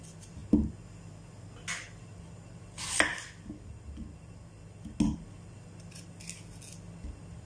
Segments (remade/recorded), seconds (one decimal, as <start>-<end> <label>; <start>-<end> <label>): 0.0-7.5 recorded